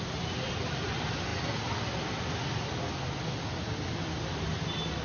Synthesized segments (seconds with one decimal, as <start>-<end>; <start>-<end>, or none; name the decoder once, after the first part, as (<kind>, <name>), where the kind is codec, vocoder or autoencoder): none